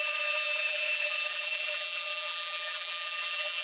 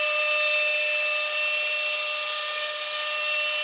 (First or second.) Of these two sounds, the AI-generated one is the first